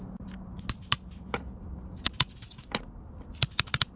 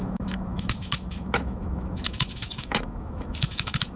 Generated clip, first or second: second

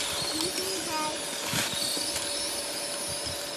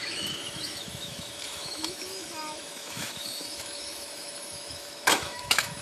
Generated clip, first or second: second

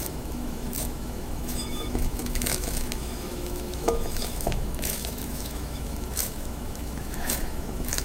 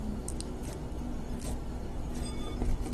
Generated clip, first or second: first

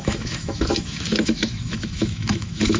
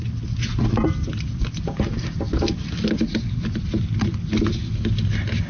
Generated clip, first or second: first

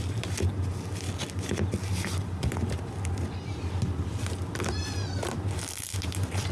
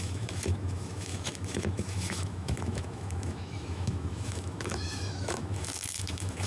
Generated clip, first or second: second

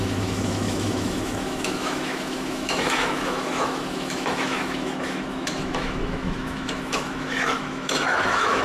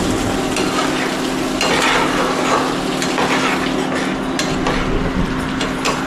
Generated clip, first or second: first